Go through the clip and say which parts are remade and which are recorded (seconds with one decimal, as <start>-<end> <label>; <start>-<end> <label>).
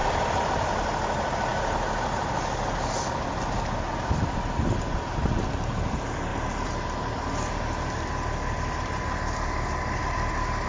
0.0-0.7 remade; 0.7-10.7 recorded